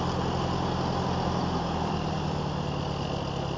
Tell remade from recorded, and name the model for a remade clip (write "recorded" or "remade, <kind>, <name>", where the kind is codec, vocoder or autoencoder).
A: recorded